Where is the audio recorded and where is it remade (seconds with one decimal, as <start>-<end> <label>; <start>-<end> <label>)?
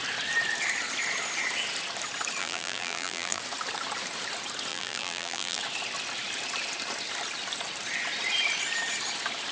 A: 0.0-2.4 recorded; 2.4-3.4 remade; 3.4-4.7 recorded; 4.7-5.6 remade; 5.6-9.5 recorded